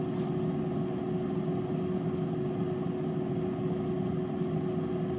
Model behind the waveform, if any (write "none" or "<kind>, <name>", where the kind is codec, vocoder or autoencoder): none